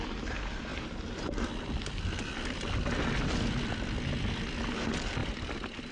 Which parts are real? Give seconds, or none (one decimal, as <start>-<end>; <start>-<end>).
0.0-5.9